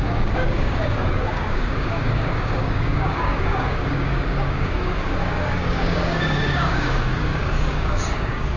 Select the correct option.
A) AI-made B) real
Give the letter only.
A